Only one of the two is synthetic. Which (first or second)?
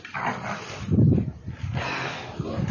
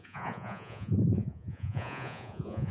second